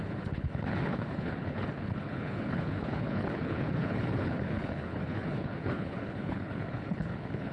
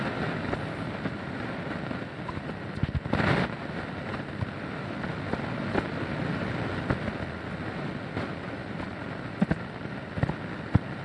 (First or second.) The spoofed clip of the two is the first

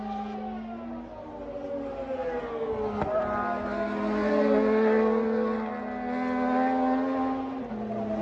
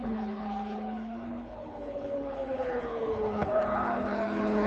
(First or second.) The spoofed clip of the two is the second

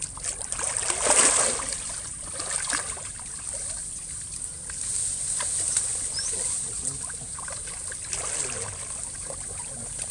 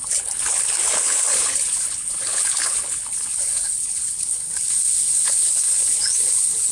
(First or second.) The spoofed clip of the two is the second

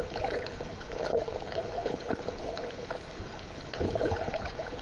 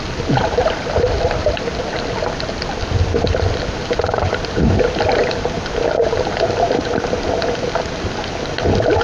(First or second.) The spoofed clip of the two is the first